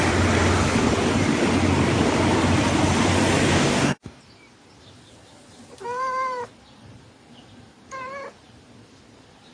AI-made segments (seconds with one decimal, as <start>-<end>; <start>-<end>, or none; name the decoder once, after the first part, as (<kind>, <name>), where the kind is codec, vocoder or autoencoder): 3.5-4.2 (codec, DAC)